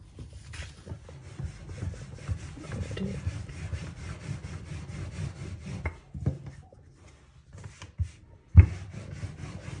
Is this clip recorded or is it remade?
recorded